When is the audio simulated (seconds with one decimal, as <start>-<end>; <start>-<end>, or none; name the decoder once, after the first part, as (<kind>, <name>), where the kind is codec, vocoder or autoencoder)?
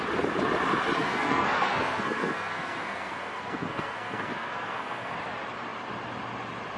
1.0-5.1 (codec, SNAC)